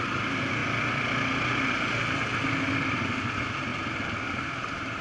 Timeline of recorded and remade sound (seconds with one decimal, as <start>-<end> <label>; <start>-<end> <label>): 0.0-0.6 remade; 0.6-2.9 recorded; 2.9-3.7 remade; 3.7-4.3 recorded; 4.3-5.0 remade